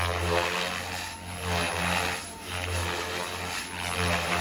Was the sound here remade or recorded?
recorded